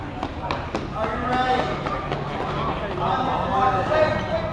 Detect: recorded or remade recorded